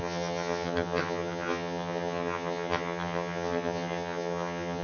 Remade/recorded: remade